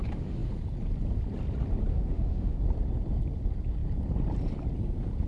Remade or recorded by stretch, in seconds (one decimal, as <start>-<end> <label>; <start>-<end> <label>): 0.0-1.9 recorded; 1.9-2.6 remade; 2.6-5.3 recorded